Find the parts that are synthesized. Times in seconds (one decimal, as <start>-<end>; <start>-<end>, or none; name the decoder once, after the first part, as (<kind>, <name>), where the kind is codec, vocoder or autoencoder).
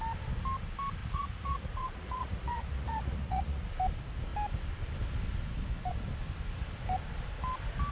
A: 1.0-3.6 (vocoder, Vocos)